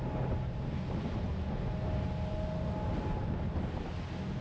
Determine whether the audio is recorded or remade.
recorded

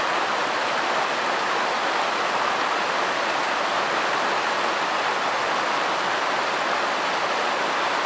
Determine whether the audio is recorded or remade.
recorded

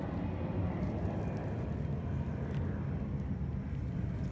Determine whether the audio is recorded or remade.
recorded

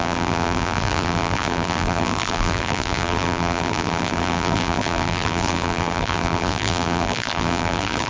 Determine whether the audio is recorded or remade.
remade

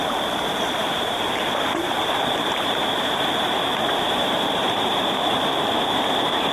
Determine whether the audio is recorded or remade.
remade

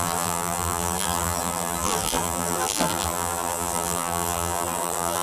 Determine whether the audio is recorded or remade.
remade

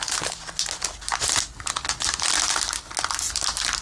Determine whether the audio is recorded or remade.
recorded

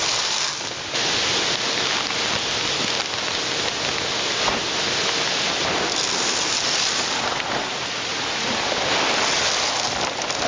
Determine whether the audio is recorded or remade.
recorded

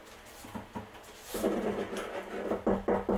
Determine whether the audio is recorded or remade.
recorded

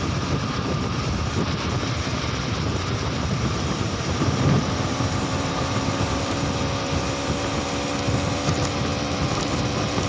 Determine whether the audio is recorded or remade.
remade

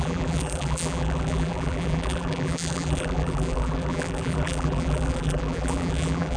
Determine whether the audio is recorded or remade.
remade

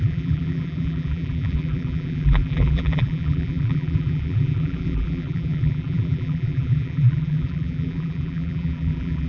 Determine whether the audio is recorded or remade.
remade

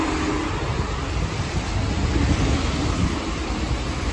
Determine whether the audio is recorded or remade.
recorded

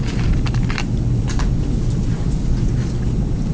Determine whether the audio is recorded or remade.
recorded